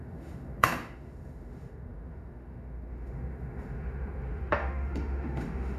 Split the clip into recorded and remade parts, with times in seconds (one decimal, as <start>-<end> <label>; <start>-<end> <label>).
0.0-5.8 remade